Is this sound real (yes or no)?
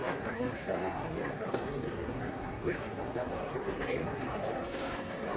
no